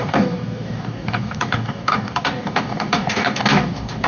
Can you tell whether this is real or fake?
fake